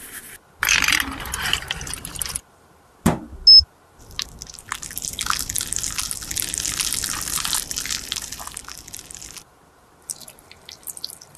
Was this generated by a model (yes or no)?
no